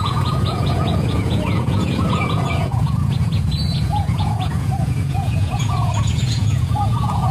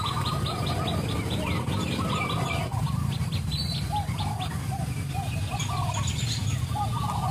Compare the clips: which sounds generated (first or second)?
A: first